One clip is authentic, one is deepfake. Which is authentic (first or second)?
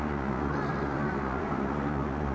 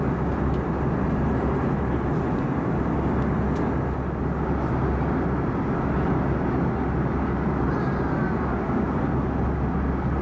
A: second